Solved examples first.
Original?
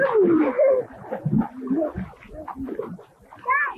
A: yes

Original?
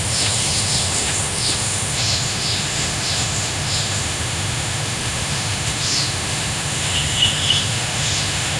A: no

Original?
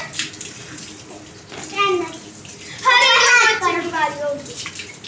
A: yes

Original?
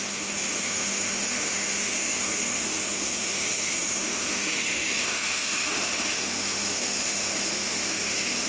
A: no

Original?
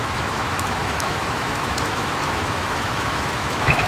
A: no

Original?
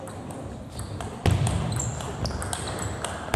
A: yes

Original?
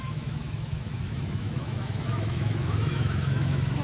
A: no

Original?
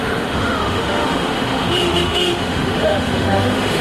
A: no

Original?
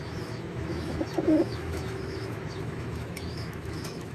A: no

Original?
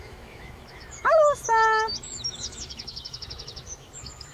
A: no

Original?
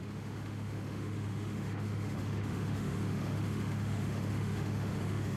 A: no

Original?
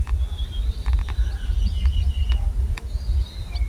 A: yes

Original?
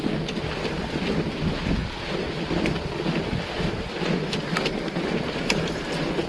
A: yes